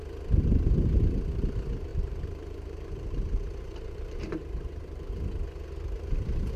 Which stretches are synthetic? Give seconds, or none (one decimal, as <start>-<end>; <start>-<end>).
1.9-5.1